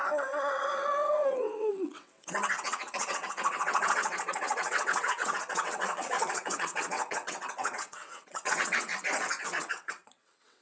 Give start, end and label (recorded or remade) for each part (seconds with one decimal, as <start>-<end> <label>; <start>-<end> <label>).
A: 0.0-8.9 remade; 8.9-9.6 recorded; 9.6-10.6 remade